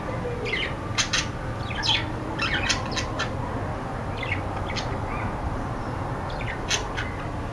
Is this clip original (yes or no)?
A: yes